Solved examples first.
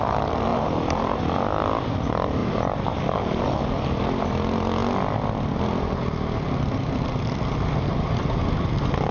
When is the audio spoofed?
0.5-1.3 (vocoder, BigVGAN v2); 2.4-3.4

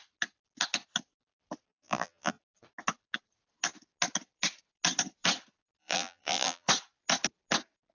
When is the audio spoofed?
1.7-2.3 (vocoder, BigVGAN v2); 5.8-6.7

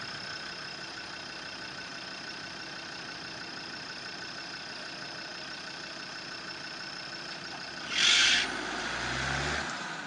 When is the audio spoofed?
5.3-6.1 (vocoder, BigVGAN v2)

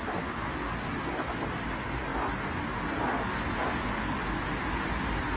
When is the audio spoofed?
none

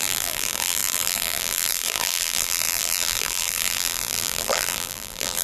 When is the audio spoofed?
0.0-5.4 (vocoder, BigVGAN v2)